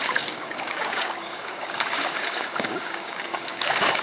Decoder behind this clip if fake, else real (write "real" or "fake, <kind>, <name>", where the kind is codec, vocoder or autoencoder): fake, codec, DAC